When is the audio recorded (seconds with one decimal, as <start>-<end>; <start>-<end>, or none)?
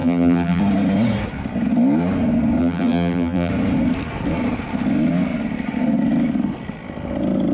0.6-2.6; 3.5-7.5